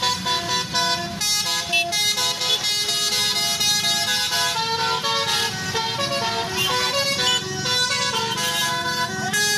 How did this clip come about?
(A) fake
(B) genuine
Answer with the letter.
B